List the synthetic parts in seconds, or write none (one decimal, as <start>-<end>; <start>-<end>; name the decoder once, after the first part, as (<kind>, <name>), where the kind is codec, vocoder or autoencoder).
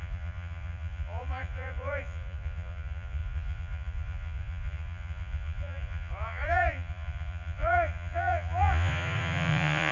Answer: 0.0-9.9 (vocoder, Vocos)